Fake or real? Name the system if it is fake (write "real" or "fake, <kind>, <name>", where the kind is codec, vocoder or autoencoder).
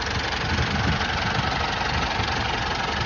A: real